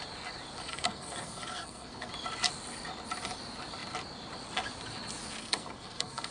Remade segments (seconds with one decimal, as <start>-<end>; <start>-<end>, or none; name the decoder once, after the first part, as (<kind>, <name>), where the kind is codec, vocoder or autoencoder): 0.7-2.1 (codec, SNAC); 5.4-6.3